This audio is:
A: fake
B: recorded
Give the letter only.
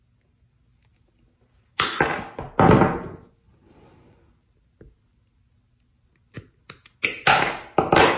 B